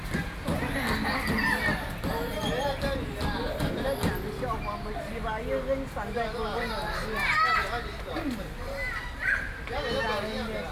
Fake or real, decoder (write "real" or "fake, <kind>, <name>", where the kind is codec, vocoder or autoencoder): real